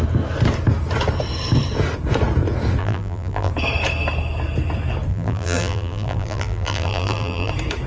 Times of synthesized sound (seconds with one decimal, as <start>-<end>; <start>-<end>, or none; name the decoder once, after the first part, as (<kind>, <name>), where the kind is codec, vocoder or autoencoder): 2.8-3.5 (vocoder, BigVGAN v2); 5.1-7.5